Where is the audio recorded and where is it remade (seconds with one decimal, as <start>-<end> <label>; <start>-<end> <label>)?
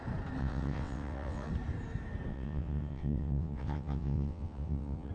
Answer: 0.0-0.4 recorded; 0.4-1.5 remade; 1.5-2.3 recorded; 2.3-5.1 remade